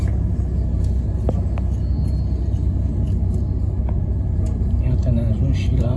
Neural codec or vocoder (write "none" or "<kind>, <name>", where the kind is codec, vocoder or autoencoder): none